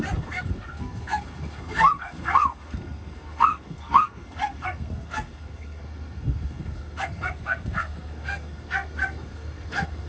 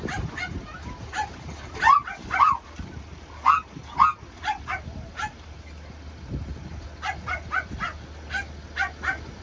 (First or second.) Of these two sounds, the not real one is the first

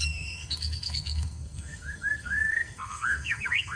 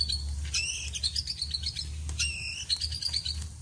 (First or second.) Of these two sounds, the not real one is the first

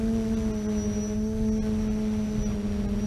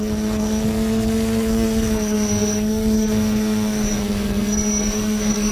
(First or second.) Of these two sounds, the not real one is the second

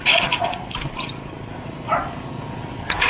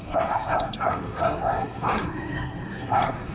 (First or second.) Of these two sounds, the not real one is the second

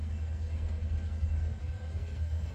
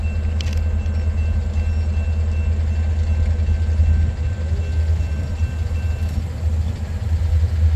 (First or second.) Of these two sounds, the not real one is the first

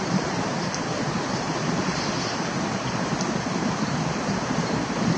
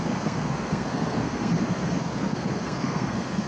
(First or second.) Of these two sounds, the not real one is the second